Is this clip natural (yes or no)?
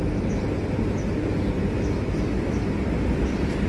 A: yes